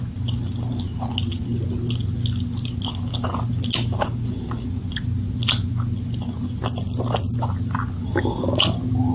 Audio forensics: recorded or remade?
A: recorded